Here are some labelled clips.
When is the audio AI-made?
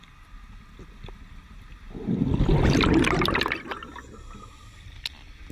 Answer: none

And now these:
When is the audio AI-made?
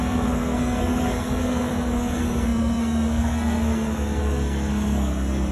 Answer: 0.0-5.5 (codec, SNAC)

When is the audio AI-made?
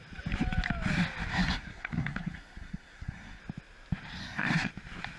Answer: 1.3-3.4 (codec, SNAC); 4.2-4.7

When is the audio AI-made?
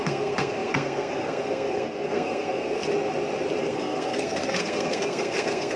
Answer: 0.0-2.8 (codec, SNAC); 3.6-5.8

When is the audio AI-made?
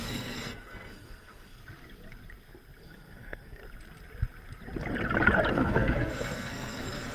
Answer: 0.0-1.6 (codec, SNAC); 2.8-3.6; 5.5-7.1